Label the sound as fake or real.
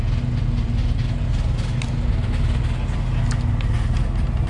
real